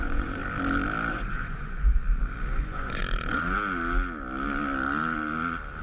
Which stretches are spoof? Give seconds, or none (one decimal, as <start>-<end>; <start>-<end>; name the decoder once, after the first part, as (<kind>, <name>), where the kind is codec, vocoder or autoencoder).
0.0-0.4 (vocoder, Vocos); 1.1-2.0; 2.6-3.0